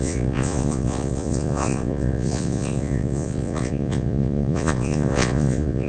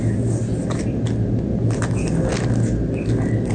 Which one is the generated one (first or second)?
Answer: first